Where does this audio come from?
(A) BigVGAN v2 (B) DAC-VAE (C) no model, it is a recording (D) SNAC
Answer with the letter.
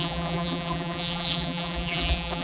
A